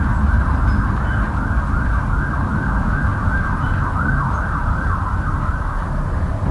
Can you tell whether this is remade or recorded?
recorded